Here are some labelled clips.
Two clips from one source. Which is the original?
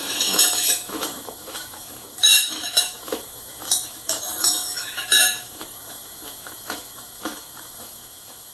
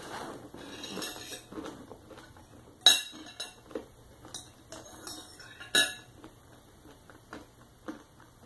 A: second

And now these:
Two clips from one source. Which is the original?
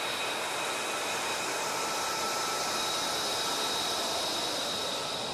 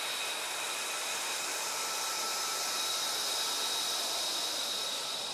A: first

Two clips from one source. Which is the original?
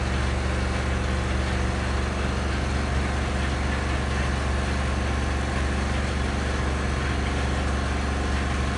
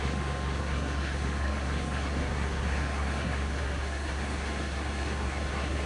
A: first